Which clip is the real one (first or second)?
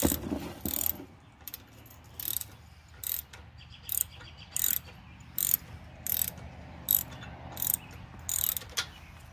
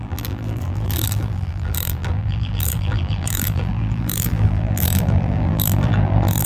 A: first